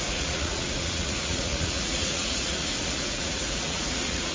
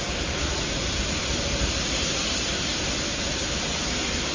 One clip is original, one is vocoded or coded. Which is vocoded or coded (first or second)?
first